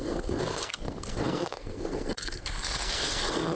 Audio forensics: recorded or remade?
remade